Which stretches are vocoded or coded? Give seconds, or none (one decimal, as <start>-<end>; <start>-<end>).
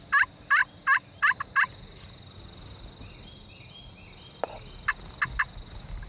none